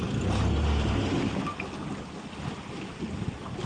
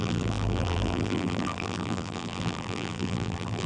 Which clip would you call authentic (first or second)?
first